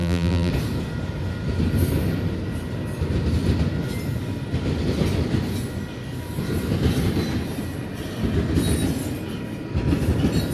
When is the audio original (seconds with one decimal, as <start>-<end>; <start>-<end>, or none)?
0.5-10.5